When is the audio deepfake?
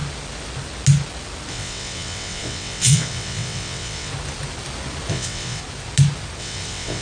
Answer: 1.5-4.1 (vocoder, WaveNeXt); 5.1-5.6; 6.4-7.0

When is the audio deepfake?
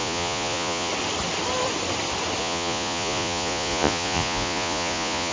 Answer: 0.0-0.9 (vocoder, Vocos); 2.4-5.3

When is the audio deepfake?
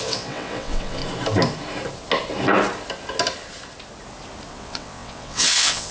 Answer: 0.0-1.0 (vocoder, WaveNeXt); 4.5-5.9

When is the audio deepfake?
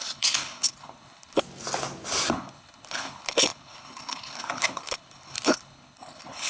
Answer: 0.0-1.4 (codec, HILCodec); 2.3-6.5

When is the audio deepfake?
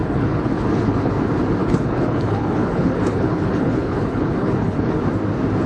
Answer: 0.0-1.1 (codec, HILCodec); 1.6-5.0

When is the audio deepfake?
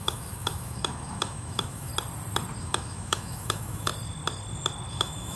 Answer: 0.0-1.9 (autoencoder, DAC-VAE); 2.6-3.9; 4.9-5.4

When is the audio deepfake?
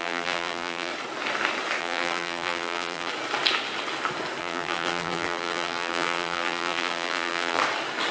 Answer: 0.0-0.9 (vocoder, BigVGAN v2); 1.8-3.1; 4.4-7.6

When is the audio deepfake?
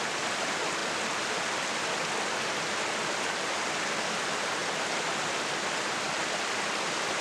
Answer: 4.6-6.1 (vocoder, BigVGAN v2)